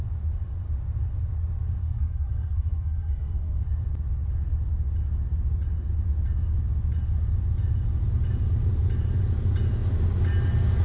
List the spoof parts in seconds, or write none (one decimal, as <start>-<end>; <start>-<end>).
1.8-3.6